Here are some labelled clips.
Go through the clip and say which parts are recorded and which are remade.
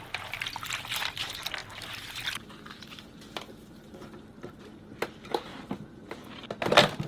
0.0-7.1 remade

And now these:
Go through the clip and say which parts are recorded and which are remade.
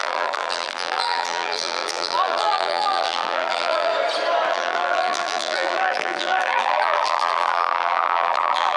0.0-3.9 remade; 3.9-4.5 recorded; 4.5-8.8 remade